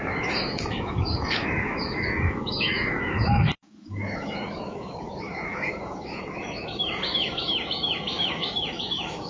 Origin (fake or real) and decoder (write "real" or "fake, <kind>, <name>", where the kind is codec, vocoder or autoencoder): fake, autoencoder, DAC-VAE